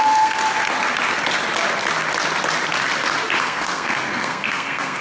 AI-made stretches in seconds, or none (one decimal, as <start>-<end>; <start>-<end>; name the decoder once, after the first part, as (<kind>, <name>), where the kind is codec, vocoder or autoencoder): 0.0-0.4 (codec, SNAC); 3.4-5.0